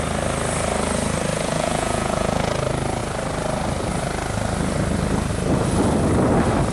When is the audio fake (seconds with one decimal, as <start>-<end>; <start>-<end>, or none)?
1.3-2.5